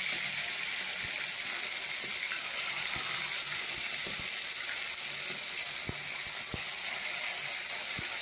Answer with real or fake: real